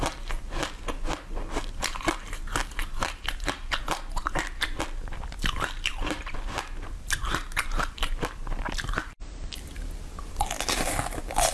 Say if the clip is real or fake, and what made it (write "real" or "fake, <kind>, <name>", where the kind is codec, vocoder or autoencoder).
real